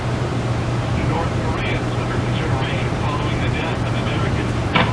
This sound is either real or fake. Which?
fake